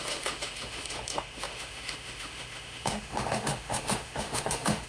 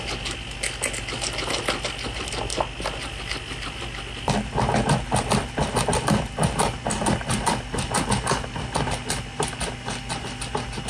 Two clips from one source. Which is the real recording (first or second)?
second